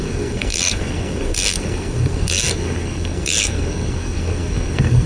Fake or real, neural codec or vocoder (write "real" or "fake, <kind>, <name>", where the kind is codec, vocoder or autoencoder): fake, codec, SNAC